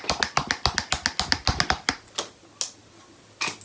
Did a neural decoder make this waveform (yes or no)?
no